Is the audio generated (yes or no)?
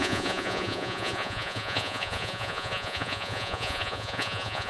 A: yes